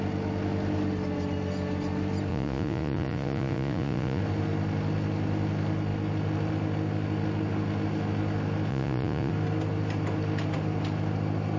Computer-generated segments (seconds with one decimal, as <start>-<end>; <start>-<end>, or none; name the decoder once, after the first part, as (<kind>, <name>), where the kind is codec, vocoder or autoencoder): 2.3-4.2 (vocoder, Vocos); 8.7-9.3